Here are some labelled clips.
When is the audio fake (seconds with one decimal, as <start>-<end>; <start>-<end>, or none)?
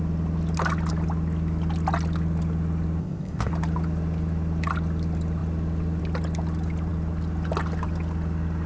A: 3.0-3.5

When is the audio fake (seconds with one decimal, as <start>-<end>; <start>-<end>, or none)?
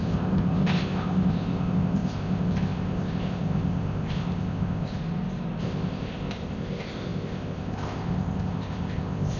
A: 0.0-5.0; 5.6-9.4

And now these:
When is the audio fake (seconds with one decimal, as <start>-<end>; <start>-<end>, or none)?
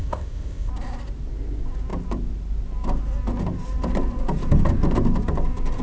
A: 0.0-0.7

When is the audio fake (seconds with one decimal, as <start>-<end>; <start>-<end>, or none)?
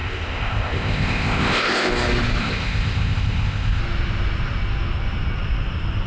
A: 0.0-1.9; 2.4-3.8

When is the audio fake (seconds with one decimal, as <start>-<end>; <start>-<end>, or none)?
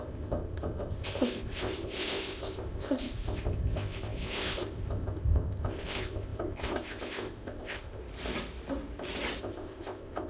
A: 0.0-8.0; 9.4-10.3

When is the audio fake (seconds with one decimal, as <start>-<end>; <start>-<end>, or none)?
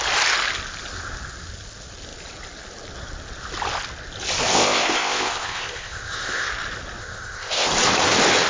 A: 4.5-6.5; 7.0-7.7